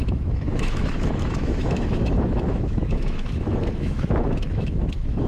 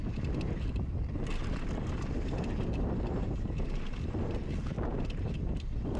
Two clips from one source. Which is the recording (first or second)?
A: second